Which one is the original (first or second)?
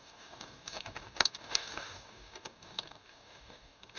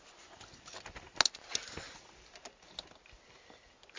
second